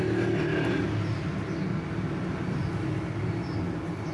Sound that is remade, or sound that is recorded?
recorded